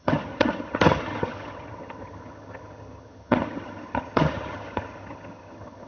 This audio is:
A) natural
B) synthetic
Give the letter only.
B